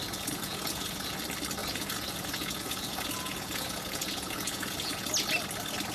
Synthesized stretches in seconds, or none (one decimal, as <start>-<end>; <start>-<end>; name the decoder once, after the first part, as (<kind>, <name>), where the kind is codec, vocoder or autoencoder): 0.0-1.2 (vocoder, Vocos); 1.6-5.1